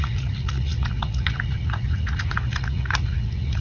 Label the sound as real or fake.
fake